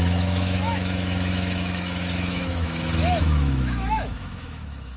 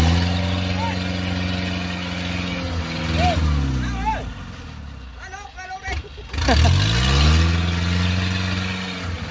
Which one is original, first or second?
second